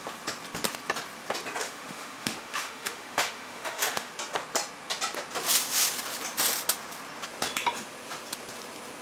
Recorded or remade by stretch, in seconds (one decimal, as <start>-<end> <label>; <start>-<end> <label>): 0.0-1.6 recorded; 1.6-4.1 remade; 4.1-9.0 recorded